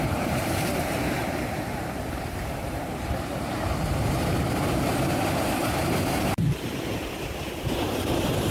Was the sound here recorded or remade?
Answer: remade